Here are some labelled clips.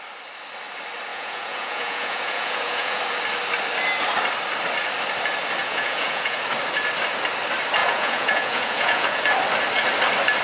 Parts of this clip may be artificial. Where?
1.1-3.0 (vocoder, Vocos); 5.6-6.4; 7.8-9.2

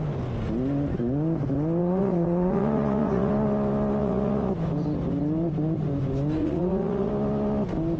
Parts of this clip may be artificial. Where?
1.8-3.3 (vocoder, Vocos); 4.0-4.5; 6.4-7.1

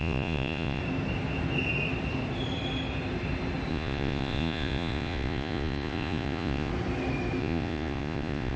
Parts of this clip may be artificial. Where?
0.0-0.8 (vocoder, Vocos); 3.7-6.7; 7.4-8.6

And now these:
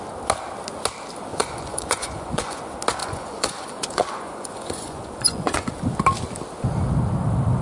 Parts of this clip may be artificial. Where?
1.3-2.6 (vocoder, Vocos); 3.0-5.7